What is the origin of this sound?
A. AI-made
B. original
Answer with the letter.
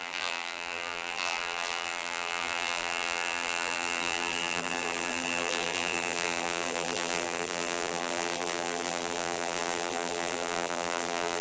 A